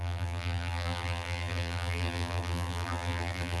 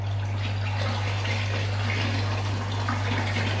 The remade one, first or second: first